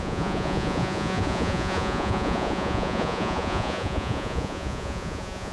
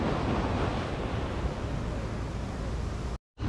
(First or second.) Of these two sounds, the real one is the second